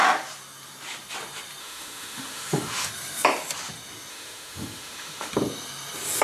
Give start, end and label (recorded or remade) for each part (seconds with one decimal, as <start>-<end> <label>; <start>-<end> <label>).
0.0-1.6 recorded; 1.6-2.9 remade; 2.9-4.1 recorded; 4.1-5.3 remade; 5.3-6.2 recorded